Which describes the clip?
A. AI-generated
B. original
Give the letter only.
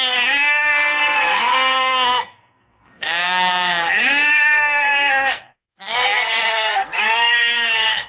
A